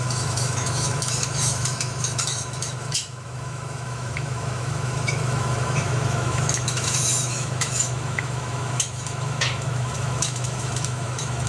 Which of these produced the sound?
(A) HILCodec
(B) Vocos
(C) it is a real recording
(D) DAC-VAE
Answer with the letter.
D